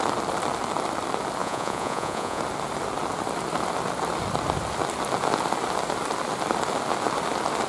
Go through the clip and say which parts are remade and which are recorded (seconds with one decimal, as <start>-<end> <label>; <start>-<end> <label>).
0.0-1.4 recorded; 1.4-2.4 remade; 2.4-7.7 recorded